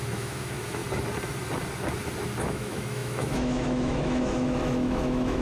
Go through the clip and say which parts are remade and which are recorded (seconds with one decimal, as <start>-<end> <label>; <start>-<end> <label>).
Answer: 0.0-0.8 remade; 0.8-2.4 recorded; 2.4-5.4 remade